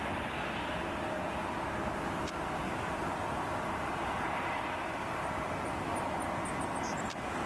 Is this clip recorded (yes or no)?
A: yes